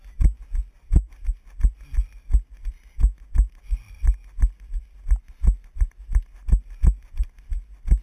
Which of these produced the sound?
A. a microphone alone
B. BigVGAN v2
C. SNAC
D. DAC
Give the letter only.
A